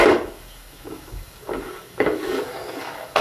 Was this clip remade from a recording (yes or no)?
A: yes